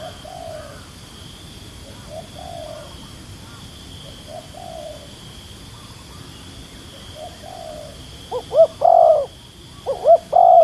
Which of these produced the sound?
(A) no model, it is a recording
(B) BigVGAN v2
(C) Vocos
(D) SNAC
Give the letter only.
A